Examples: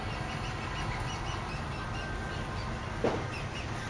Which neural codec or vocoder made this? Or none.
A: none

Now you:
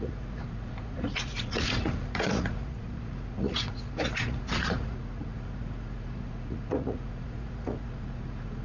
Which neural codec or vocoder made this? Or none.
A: vocoder, Vocos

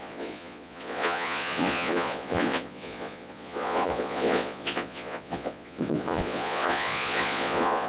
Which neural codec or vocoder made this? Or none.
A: vocoder, Vocos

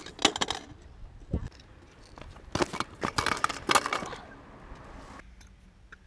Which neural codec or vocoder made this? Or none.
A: none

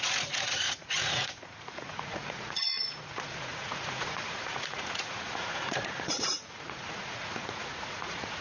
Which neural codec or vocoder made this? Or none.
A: vocoder, Vocos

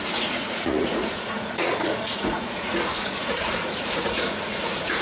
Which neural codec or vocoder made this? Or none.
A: vocoder, Vocos